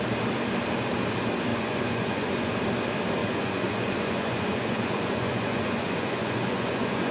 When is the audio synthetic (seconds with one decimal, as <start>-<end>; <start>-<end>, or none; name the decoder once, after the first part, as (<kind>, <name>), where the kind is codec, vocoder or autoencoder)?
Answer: 1.5-2.5 (vocoder, Vocos); 3.2-7.1